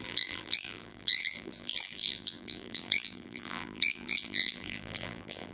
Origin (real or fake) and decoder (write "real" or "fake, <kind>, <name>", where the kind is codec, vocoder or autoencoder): fake, vocoder, BigVGAN v2